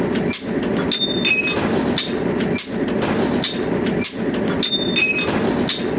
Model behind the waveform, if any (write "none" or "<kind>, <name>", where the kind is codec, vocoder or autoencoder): none